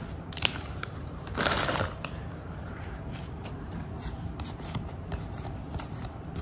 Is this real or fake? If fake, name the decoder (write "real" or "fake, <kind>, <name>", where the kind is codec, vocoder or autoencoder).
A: fake, vocoder, BigVGAN v2